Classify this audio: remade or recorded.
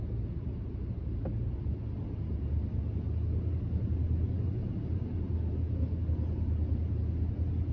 recorded